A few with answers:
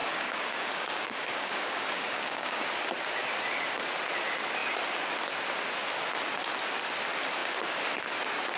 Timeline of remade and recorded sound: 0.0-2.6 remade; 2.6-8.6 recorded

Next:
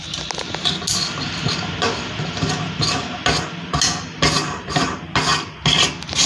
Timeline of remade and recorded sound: 0.0-6.3 recorded

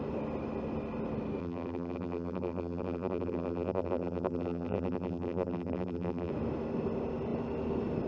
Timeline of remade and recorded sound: 0.0-1.4 recorded; 1.4-6.3 remade; 6.3-8.1 recorded